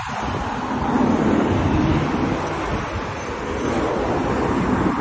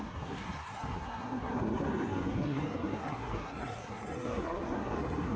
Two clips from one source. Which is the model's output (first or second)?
second